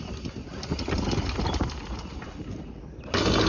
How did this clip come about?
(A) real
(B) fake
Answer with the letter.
A